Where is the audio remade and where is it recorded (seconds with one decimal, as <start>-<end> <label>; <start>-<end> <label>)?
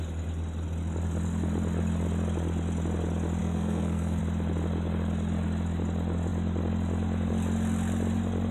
0.0-3.4 recorded; 3.4-4.2 remade; 4.2-8.5 recorded